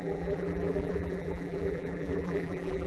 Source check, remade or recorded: remade